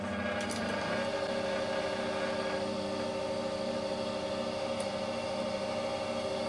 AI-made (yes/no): no